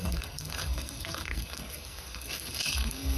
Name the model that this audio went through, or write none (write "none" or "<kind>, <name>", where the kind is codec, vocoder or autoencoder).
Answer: codec, SNAC